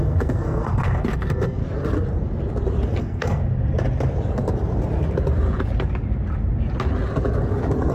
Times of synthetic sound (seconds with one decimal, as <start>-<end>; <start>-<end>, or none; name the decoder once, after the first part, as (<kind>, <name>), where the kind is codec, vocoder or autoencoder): 0.0-1.6 (codec, SNAC); 3.0-3.4